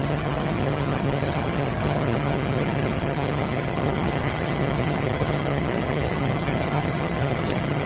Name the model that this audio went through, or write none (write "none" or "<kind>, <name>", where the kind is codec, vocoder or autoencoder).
vocoder, HiFi-GAN